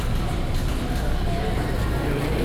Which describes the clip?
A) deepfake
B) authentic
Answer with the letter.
B